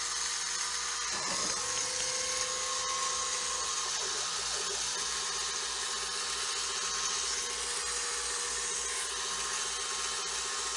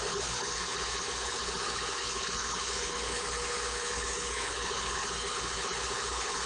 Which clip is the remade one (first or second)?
second